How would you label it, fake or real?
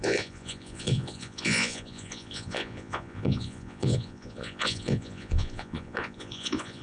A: fake